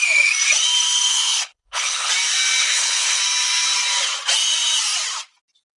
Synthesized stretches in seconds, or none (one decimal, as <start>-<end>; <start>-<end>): 1.1-2.1; 2.6-3.2